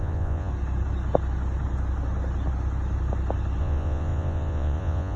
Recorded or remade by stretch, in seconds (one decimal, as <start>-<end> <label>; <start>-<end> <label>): 0.0-0.5 remade; 0.5-3.6 recorded; 3.6-5.2 remade